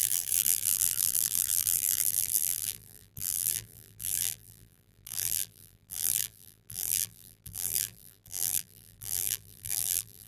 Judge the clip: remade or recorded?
remade